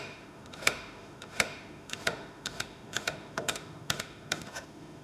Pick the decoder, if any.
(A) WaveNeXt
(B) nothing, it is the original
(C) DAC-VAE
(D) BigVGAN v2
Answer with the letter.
C